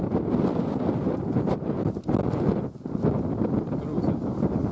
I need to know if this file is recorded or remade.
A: recorded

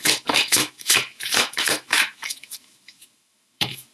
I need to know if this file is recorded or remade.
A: remade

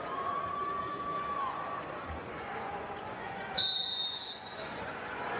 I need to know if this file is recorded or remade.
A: remade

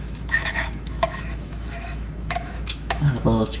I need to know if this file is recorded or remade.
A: remade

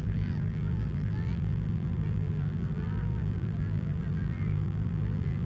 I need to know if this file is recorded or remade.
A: remade